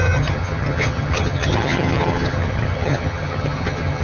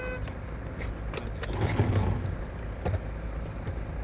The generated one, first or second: first